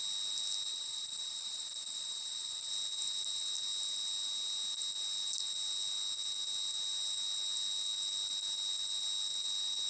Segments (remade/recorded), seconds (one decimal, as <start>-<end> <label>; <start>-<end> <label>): 0.0-0.7 recorded; 0.7-2.7 remade; 2.7-9.9 recorded

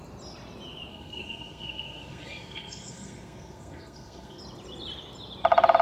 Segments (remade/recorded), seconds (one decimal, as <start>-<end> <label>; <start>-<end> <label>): 0.0-0.9 recorded; 0.9-4.4 remade; 4.4-5.8 recorded

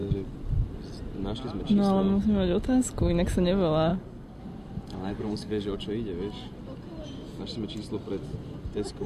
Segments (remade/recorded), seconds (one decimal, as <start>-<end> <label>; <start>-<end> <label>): 0.0-3.9 recorded; 3.9-4.4 remade; 4.4-5.1 recorded; 5.1-5.8 remade; 5.8-9.1 recorded

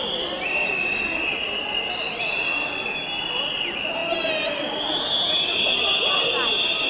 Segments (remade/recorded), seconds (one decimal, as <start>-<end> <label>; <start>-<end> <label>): 0.0-6.9 recorded

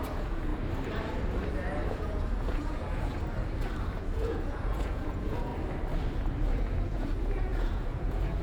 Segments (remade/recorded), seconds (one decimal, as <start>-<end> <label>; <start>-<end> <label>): 0.0-0.5 remade; 0.5-1.9 recorded; 1.9-3.1 remade; 3.1-4.0 recorded; 4.0-5.5 remade; 5.5-6.5 recorded; 6.5-8.4 remade

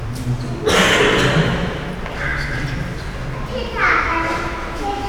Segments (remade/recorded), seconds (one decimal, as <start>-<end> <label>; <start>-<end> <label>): 0.0-1.4 recorded; 1.4-1.9 remade; 1.9-3.8 recorded; 3.8-5.1 remade